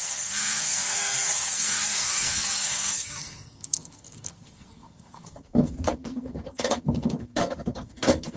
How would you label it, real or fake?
fake